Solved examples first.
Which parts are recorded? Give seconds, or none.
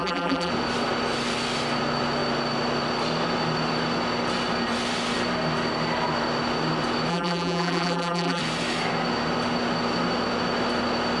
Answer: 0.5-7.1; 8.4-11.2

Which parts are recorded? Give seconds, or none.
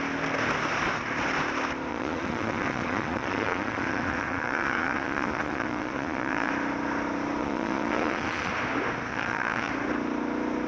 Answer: 0.0-1.9; 6.5-7.4; 8.5-9.1; 9.7-10.7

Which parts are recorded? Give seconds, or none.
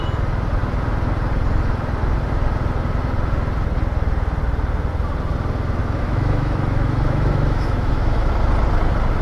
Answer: 0.0-5.8; 8.3-9.2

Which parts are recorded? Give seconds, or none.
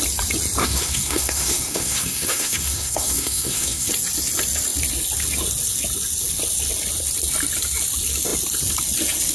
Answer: 0.0-0.6; 3.9-9.3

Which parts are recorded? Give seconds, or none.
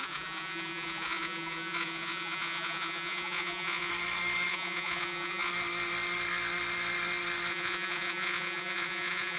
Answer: 3.9-4.5; 5.5-7.5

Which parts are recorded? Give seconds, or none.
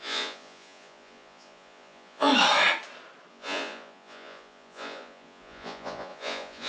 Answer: 2.3-3.3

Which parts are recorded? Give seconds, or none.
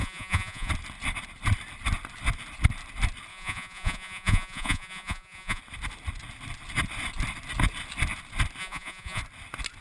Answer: 0.7-3.3; 5.6-8.6; 9.2-9.8